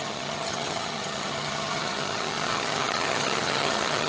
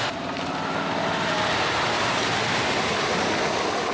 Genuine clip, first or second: second